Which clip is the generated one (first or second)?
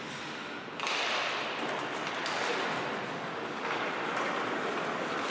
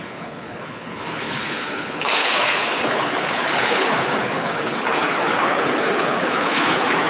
second